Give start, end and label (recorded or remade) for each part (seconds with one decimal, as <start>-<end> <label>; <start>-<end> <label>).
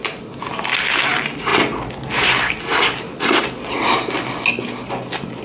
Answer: 0.0-5.4 recorded